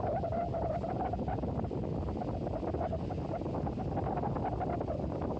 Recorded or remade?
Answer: recorded